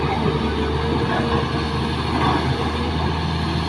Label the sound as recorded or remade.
recorded